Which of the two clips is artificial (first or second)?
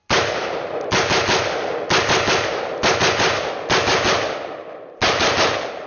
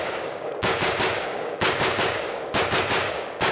second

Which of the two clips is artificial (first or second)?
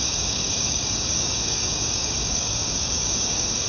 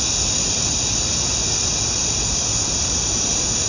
first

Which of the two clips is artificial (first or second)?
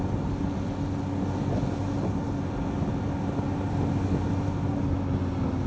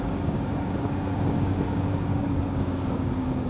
second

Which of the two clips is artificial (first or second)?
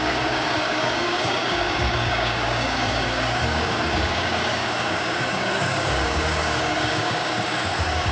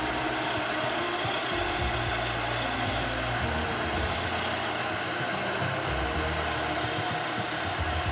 first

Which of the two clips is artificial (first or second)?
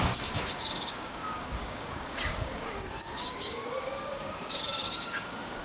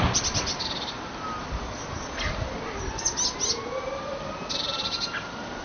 first